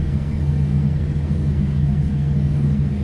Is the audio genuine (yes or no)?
no